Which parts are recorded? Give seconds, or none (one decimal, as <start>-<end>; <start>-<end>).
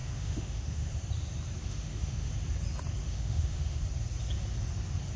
0.9-1.6; 2.3-3.0; 3.8-5.2